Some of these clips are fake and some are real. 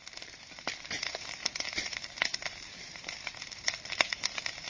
fake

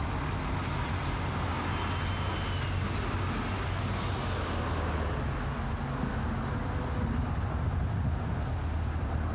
real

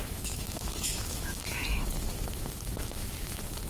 fake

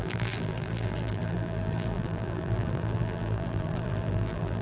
fake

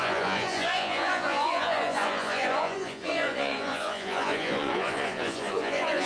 fake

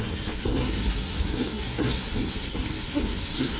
fake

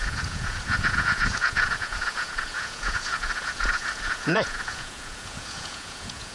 fake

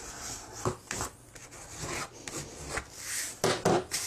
real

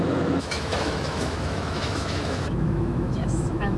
fake